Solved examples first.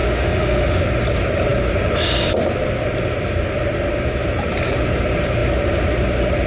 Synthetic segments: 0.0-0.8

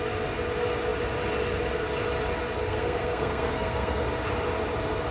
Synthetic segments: 2.6-4.0

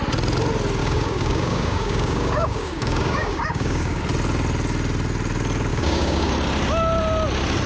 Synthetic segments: 0.8-4.0; 5.7-6.3

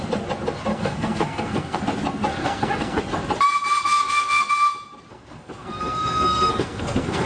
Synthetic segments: 0.7-1.8; 2.4-3.0; 3.9-4.5; 5.1-7.3

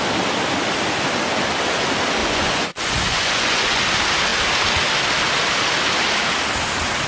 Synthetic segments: 2.2-3.8

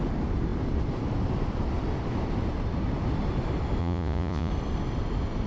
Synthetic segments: 3.8-4.5